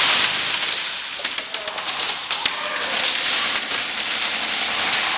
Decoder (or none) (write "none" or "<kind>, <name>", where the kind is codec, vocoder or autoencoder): none